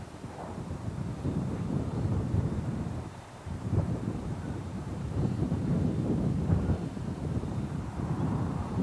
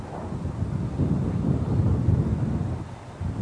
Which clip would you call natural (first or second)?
second